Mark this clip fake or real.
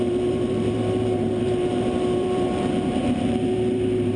fake